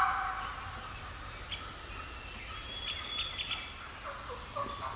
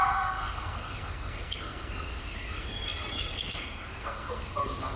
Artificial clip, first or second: second